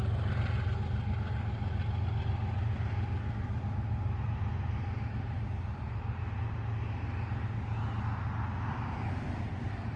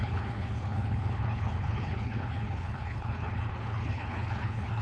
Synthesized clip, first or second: second